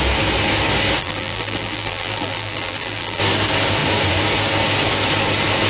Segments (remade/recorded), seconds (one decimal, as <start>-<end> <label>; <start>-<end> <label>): 0.0-1.0 recorded; 1.0-3.2 remade; 3.2-5.7 recorded